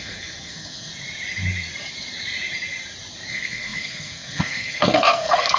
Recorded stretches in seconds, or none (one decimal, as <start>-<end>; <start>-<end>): 0.9-3.3